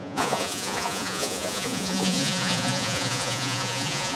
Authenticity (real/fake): fake